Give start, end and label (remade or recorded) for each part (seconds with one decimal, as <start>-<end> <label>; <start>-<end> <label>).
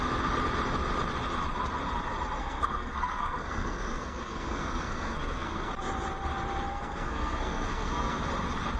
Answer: 0.0-2.4 recorded; 2.4-5.7 remade; 5.7-6.7 recorded; 6.7-8.2 remade; 8.2-8.8 recorded